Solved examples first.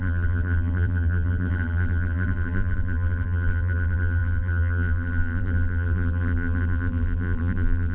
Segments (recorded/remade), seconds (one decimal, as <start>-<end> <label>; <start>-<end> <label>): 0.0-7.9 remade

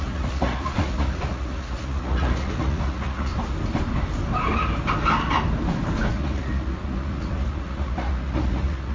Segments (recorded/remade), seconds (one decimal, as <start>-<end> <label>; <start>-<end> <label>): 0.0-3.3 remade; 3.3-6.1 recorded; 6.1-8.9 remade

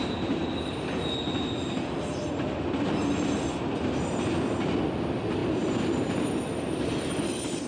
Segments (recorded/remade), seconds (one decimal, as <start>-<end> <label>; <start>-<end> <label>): 0.0-0.4 remade; 0.4-3.0 recorded; 3.0-7.7 remade

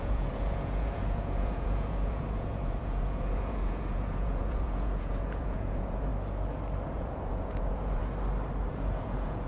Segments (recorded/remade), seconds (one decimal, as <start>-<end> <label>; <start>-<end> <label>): 0.0-6.1 remade; 6.1-6.9 recorded; 6.9-8.0 remade; 8.0-8.7 recorded; 8.7-9.5 remade

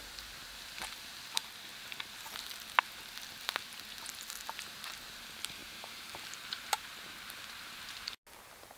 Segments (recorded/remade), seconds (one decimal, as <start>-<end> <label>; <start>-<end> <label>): 0.0-5.6 recorded; 5.6-7.4 remade; 7.4-8.8 recorded

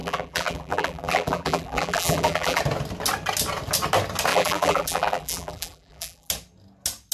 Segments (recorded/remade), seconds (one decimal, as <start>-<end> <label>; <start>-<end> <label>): 0.0-2.6 remade; 2.6-4.3 recorded; 4.3-6.3 remade; 6.3-7.1 recorded

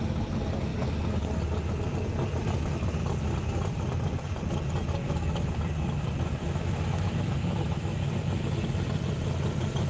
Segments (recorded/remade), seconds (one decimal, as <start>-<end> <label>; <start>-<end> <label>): 0.0-5.0 recorded; 5.0-5.5 remade; 5.5-6.4 recorded; 6.4-8.0 remade; 8.0-9.9 recorded

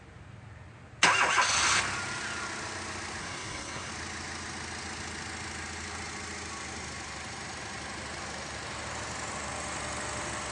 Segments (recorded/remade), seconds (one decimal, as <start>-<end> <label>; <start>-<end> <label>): 0.0-3.2 recorded; 3.2-3.9 remade; 3.9-10.5 recorded